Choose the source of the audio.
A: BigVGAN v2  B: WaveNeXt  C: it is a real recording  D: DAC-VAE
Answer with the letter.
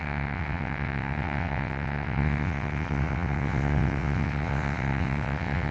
B